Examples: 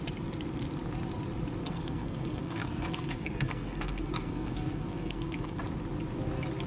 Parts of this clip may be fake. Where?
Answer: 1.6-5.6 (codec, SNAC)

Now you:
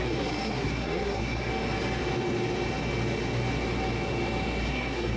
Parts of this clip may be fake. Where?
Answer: 0.0-1.5 (codec, SNAC); 4.6-5.2